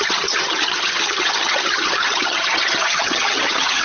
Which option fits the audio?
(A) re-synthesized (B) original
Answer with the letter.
A